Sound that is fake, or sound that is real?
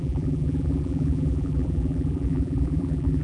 fake